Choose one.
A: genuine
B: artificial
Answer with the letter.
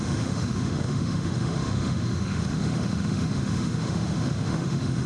B